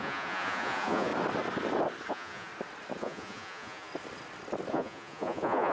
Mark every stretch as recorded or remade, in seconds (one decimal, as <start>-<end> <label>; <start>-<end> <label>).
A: 0.0-1.1 remade; 1.1-2.1 recorded; 2.1-2.5 remade; 2.5-3.0 recorded; 3.0-3.9 remade; 3.9-4.7 recorded; 4.7-5.7 remade